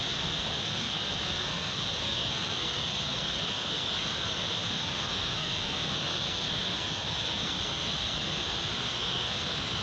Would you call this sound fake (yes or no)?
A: yes